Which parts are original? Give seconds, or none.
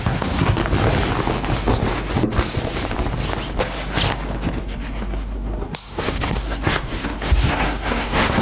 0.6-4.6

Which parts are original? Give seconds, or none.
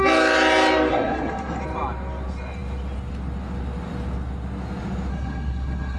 0.0-0.9; 1.6-5.1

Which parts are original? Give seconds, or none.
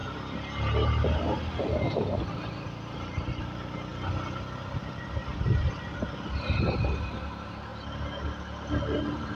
0.0-9.3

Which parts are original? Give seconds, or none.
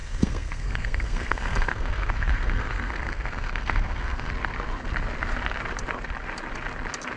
4.3-7.2